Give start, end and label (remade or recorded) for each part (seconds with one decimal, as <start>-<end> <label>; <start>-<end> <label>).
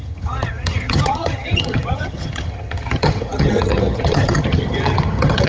0.0-5.5 remade